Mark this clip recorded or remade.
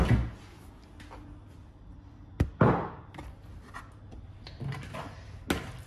recorded